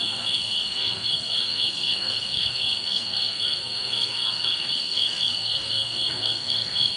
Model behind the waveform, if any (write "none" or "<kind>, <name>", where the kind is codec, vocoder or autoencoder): codec, SNAC